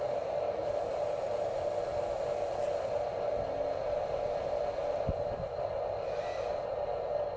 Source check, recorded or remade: recorded